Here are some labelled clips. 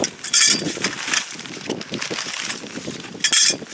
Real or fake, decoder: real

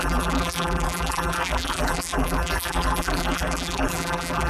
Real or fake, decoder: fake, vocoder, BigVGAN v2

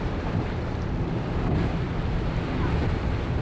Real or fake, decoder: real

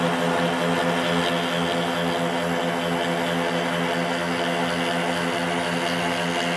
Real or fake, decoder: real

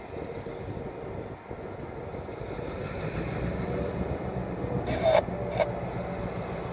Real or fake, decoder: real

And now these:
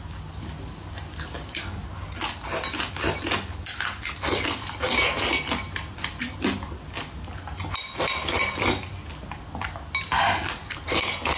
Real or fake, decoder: real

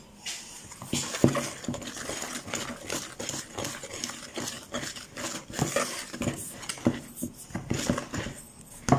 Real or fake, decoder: real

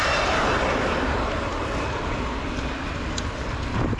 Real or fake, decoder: real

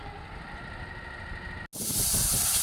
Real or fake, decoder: real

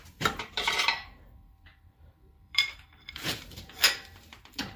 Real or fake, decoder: fake, vocoder, BigVGAN v2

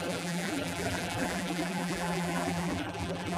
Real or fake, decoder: fake, vocoder, BigVGAN v2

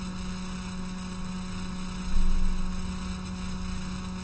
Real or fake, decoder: real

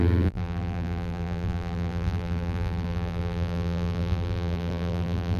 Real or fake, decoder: fake, vocoder, BigVGAN v2